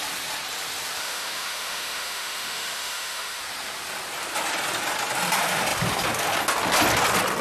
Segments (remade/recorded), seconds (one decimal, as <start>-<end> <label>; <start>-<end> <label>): 0.0-1.0 recorded; 1.0-3.4 remade; 3.4-7.4 recorded